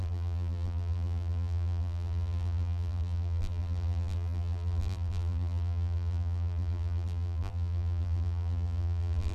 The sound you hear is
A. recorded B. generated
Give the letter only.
B